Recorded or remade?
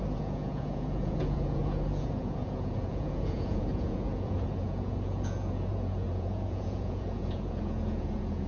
remade